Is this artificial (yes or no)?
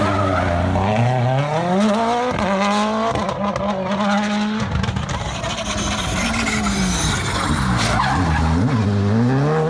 no